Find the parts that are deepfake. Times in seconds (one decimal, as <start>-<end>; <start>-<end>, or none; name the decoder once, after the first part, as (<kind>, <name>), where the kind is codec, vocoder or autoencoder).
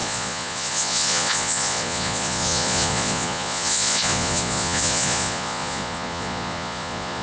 0.0-7.2 (vocoder, Vocos)